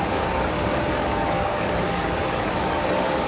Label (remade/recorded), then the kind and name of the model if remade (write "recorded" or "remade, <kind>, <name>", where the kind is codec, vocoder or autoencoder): remade, codec, DAC